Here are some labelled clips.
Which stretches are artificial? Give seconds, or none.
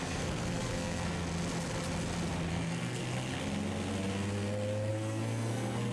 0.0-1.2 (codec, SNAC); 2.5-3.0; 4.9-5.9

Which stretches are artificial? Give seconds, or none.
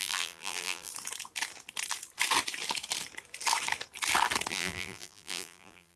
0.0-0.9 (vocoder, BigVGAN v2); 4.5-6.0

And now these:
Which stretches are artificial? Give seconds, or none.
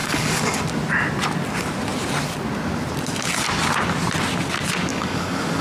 0.0-0.6 (codec, DAC); 4.9-5.6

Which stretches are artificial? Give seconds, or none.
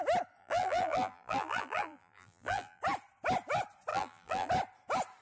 0.4-2.8 (vocoder, BigVGAN v2); 3.9-4.5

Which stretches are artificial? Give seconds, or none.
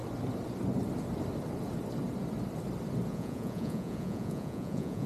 3.1-5.1 (vocoder, Vocos)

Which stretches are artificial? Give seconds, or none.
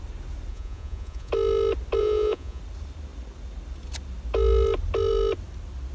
0.5-1.3 (vocoder, Vocos); 2.0-2.6